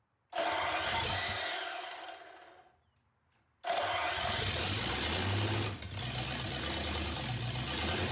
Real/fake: real